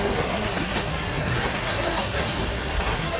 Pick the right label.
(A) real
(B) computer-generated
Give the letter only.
B